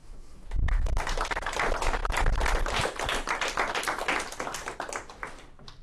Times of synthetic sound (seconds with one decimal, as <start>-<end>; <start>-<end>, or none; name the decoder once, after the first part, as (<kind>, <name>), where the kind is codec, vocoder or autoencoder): 0.0-1.2 (autoencoder, DAC-VAE)